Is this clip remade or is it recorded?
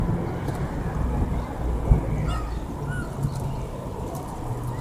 recorded